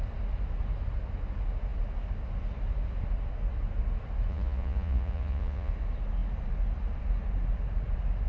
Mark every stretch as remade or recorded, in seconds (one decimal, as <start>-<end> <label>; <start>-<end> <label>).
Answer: 0.0-4.3 recorded; 4.3-5.7 remade; 5.7-8.3 recorded